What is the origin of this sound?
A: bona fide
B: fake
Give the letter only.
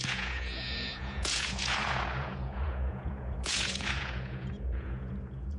B